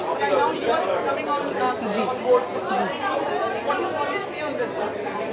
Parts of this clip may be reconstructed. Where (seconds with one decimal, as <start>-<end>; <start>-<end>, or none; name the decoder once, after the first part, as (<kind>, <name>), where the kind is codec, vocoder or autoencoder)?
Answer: none